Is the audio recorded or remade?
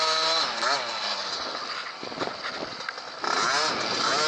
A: recorded